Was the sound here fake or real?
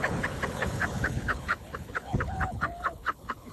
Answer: fake